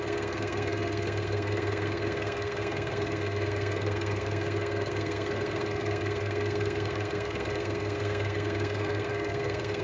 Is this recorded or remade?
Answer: remade